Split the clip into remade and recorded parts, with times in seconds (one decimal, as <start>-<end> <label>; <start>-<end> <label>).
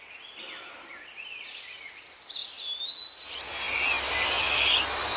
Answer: 0.0-2.4 remade; 2.4-5.2 recorded